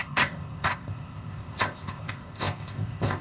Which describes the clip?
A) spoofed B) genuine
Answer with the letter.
A